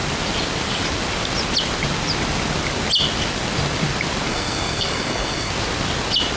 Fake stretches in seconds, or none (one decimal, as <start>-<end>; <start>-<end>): 4.3-5.5